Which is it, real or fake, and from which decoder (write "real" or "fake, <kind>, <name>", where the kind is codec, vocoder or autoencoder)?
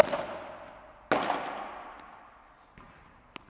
real